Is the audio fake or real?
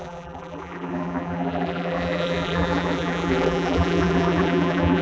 fake